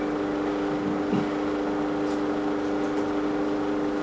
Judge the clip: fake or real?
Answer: real